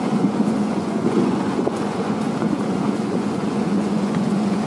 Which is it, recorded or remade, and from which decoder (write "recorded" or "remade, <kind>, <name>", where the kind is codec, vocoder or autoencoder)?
remade, vocoder, Vocos